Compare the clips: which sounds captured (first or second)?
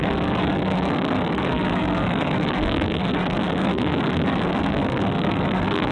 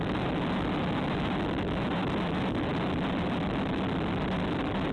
second